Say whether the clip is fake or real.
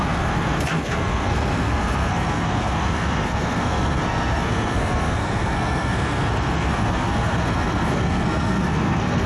fake